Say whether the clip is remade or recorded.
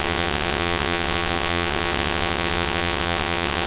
remade